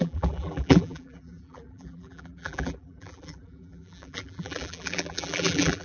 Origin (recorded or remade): remade